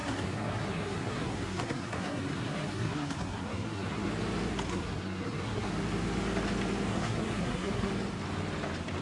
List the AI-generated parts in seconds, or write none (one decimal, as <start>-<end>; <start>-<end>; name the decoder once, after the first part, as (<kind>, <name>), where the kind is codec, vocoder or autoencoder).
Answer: 0.0-4.1 (codec, SNAC); 4.7-5.7; 6.9-7.9